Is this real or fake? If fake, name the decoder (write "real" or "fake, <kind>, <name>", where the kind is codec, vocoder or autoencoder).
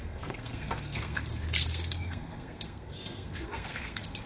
fake, codec, SNAC